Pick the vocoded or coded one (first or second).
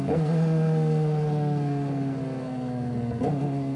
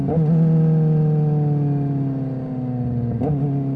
first